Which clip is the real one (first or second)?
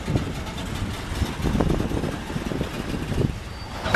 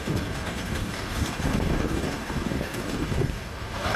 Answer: first